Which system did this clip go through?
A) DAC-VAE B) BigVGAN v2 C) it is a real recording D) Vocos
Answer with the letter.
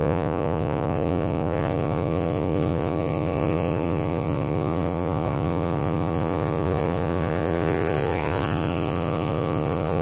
D